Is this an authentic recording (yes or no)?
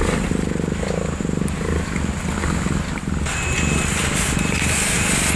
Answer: yes